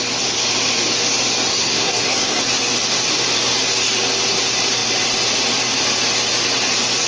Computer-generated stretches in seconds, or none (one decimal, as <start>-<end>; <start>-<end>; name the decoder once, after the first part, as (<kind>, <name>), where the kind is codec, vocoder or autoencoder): 1.5-2.4 (codec, SNAC)